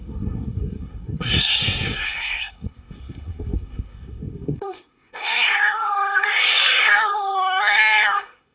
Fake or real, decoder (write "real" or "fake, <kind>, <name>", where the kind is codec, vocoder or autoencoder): fake, codec, SNAC